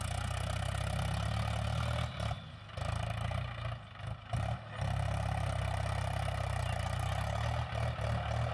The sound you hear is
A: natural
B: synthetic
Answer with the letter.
A